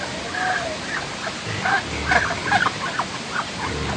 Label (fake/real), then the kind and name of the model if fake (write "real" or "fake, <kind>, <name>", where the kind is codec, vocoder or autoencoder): real